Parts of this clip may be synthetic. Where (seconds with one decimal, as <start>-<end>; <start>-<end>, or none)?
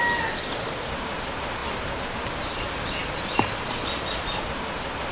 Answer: none